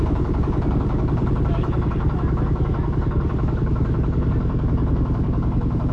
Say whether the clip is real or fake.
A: fake